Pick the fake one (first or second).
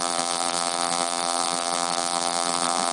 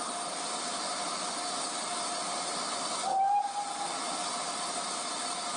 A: first